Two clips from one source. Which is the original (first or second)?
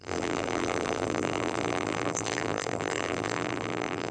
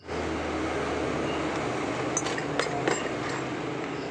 second